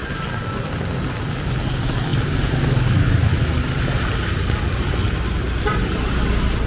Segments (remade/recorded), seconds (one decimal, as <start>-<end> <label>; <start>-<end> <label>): 0.0-6.7 recorded